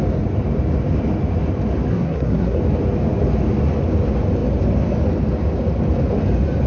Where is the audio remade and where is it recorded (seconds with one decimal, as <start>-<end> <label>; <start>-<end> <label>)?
0.0-1.9 recorded; 1.9-2.6 remade; 2.6-6.7 recorded